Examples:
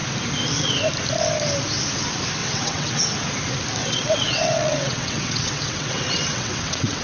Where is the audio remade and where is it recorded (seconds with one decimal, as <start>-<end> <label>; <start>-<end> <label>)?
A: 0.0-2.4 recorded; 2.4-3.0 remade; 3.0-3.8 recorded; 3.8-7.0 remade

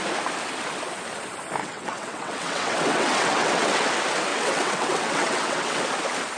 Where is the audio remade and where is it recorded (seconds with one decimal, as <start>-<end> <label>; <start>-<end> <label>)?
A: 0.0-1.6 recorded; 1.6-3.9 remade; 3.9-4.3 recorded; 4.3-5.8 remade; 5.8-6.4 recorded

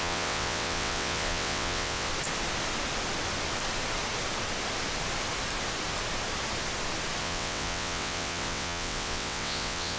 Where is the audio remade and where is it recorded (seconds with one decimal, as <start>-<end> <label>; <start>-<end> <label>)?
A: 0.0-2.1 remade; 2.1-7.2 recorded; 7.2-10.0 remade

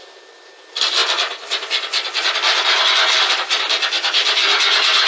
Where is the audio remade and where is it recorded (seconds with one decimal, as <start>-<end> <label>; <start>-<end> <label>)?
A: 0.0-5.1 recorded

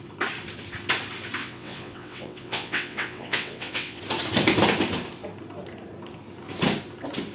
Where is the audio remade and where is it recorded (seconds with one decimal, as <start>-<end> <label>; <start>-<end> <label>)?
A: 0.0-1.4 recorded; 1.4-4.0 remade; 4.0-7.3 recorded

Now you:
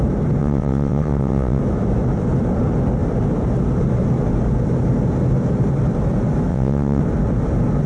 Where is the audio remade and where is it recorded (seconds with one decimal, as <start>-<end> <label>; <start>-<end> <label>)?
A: 0.0-0.4 recorded; 0.4-1.6 remade; 1.6-6.5 recorded; 6.5-7.0 remade; 7.0-7.9 recorded

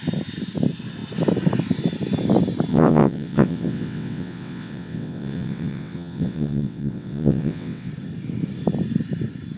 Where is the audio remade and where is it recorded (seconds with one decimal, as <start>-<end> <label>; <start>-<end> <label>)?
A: 0.0-2.7 recorded; 2.7-7.9 remade; 7.9-9.6 recorded

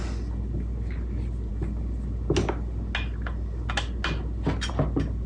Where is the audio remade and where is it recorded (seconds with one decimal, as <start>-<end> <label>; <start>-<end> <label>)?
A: 0.0-5.3 recorded